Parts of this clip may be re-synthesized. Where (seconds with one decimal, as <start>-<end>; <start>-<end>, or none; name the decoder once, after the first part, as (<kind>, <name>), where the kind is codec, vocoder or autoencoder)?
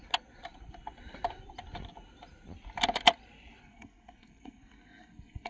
3.6-5.5 (codec, SNAC)